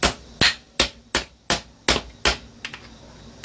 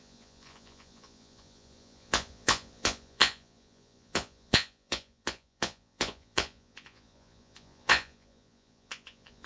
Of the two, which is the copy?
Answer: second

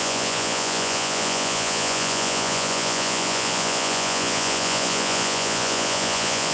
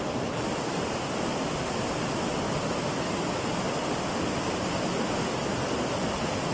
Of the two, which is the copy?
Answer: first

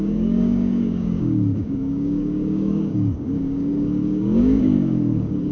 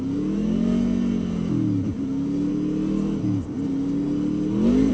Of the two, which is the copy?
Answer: first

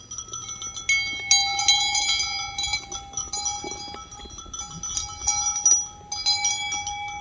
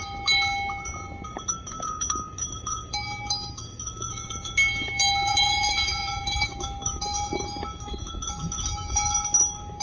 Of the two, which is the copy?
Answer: second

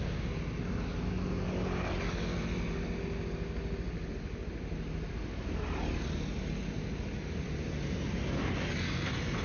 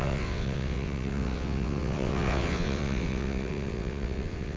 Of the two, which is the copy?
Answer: second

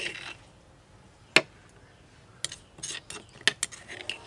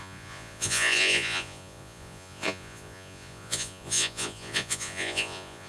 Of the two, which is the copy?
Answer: second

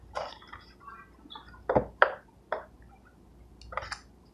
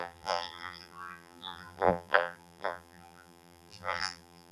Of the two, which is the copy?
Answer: second